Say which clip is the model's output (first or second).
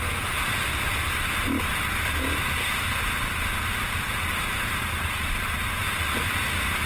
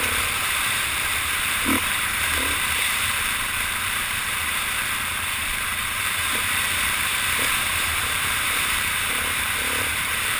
second